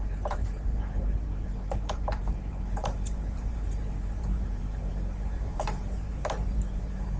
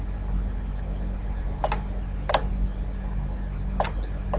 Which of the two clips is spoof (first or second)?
first